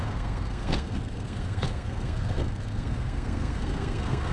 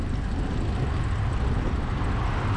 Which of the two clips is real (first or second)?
second